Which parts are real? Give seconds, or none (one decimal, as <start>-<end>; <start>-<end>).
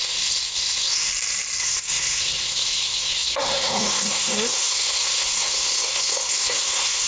1.1-1.6